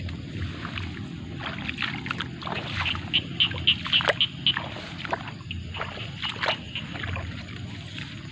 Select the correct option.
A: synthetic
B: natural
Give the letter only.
B